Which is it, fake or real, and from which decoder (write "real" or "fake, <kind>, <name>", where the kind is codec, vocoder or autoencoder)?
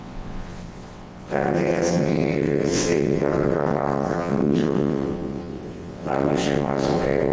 fake, vocoder, WaveNeXt